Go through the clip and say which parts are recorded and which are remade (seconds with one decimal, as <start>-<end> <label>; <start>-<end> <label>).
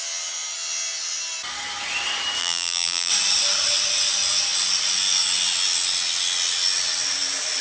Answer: 0.0-2.4 recorded; 2.4-3.1 remade; 3.1-7.6 recorded